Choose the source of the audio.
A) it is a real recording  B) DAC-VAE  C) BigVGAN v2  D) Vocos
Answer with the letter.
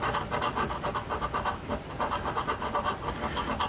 A